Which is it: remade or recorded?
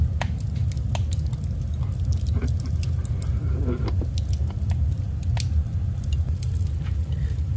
recorded